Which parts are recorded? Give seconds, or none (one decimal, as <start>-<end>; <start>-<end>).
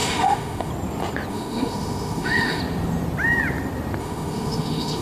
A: 0.7-1.3; 2.6-4.0